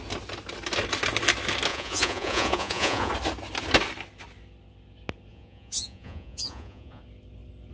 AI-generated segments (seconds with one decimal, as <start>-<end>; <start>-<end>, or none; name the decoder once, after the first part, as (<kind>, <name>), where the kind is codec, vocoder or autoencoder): 1.7-3.1 (vocoder, Vocos); 5.3-7.0